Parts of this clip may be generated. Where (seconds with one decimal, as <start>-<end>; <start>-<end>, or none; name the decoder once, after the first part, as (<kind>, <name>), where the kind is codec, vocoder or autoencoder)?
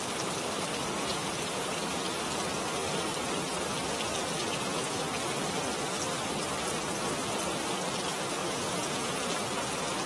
1.1-2.0 (vocoder, Vocos); 4.4-5.0; 8.4-9.0